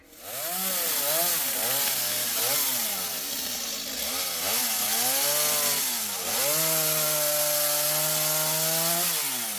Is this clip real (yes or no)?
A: yes